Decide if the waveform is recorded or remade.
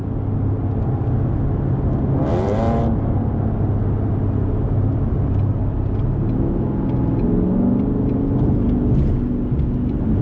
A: recorded